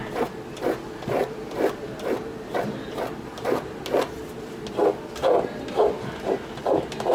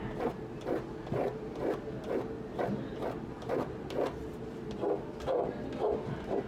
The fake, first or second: first